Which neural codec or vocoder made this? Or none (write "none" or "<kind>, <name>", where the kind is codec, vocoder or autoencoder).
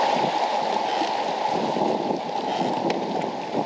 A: none